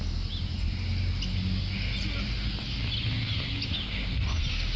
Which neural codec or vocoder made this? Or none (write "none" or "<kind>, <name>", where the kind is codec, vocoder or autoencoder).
none